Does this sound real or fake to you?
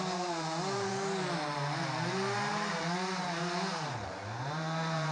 fake